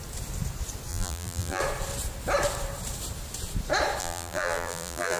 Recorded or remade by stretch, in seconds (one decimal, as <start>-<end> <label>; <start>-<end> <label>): 0.0-0.9 recorded; 0.9-1.6 remade; 1.6-4.0 recorded; 4.0-5.2 remade